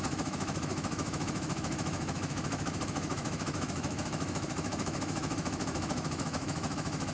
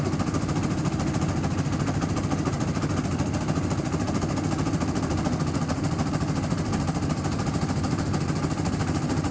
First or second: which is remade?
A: first